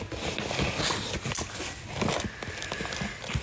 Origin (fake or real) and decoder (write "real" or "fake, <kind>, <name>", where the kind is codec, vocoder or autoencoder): real